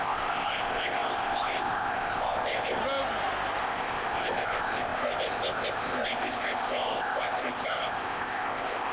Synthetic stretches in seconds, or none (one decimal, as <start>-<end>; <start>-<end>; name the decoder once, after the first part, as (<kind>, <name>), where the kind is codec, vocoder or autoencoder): 0.0-2.8 (codec, ZipCodec); 3.6-8.9